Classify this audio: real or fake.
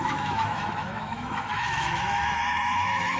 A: fake